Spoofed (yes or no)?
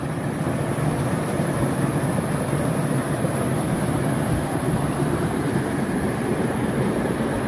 no